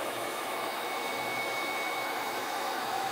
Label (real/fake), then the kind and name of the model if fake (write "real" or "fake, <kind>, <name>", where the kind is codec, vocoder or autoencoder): fake, autoencoder, DAC-VAE